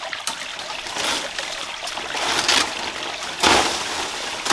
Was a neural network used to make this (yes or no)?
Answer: no